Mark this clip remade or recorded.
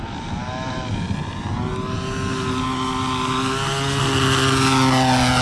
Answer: recorded